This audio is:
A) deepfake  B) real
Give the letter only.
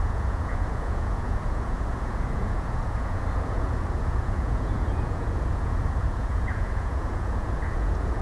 A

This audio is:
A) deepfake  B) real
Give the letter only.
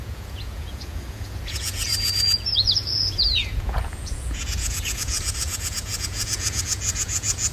A